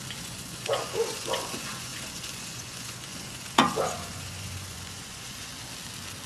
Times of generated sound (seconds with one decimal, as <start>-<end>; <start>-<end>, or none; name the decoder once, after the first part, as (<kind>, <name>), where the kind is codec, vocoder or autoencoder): 0.0-5.5 (vocoder, Vocos)

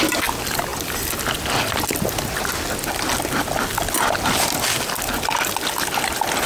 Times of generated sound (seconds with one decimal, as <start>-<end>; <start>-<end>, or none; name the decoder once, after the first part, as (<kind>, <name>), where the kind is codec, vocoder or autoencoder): none

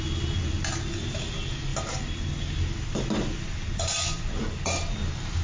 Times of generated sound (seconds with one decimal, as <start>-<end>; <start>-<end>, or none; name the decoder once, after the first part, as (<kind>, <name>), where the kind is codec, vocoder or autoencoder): none

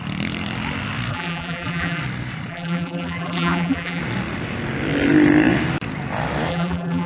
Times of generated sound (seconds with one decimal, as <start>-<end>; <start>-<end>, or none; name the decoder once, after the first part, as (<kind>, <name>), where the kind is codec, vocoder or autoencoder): 1.1-2.0 (vocoder, BigVGAN v2); 2.5-4.0; 6.5-7.1

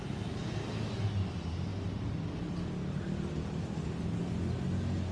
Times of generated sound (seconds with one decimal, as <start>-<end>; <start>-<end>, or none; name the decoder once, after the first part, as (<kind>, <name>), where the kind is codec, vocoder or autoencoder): none

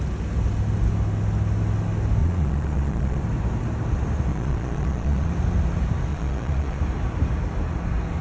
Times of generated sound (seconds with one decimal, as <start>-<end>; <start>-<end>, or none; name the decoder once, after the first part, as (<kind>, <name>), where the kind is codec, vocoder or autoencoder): 2.2-3.2 (vocoder, Vocos); 4.3-5.3; 6.1-6.8

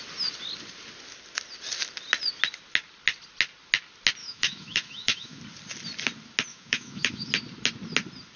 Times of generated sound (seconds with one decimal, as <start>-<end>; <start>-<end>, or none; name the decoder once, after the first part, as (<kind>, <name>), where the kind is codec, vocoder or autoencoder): 4.2-5.4 (autoencoder, DAC-VAE); 6.5-7.3

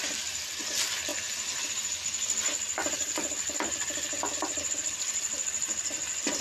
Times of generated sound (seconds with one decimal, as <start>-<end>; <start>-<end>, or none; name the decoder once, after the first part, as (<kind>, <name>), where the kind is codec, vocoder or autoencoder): 0.0-1.1 (vocoder, BigVGAN v2); 4.7-6.4